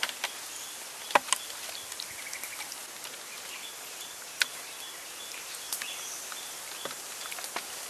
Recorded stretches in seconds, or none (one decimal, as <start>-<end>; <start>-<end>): 0.0-4.5; 5.2-7.9